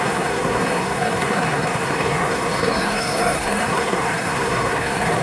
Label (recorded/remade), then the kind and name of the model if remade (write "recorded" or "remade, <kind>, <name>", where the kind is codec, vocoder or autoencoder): remade, codec, SNAC